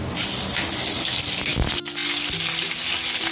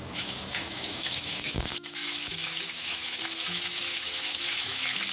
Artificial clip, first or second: second